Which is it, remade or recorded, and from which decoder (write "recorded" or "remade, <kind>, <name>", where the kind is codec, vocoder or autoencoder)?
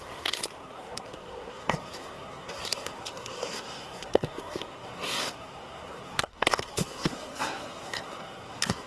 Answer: remade, codec, SNAC